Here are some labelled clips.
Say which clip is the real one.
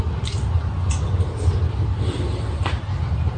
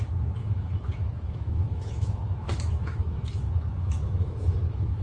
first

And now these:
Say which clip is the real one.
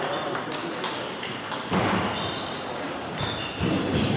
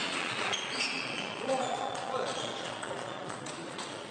first